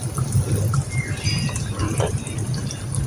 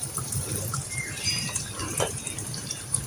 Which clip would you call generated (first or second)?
second